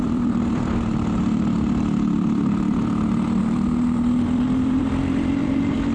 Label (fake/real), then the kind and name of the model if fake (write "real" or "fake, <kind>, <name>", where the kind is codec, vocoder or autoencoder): fake, vocoder, BigVGAN v2